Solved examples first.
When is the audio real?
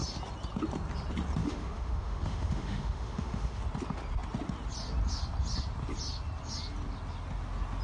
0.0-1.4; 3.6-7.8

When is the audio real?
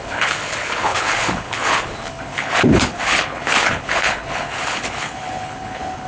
none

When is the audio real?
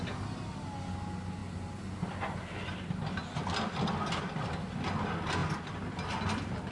0.0-6.7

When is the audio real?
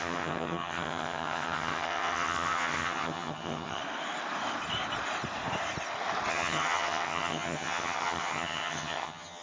3.8-6.3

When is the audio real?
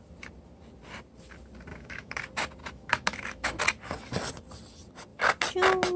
0.0-1.7; 2.2-2.6; 3.6-6.0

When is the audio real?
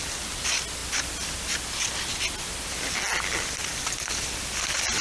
0.0-5.0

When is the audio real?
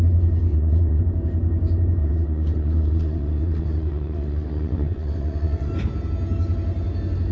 0.0-0.5; 1.0-2.0; 5.7-7.3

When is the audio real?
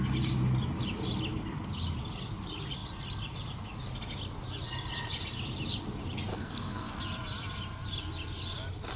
0.0-6.3; 7.0-9.0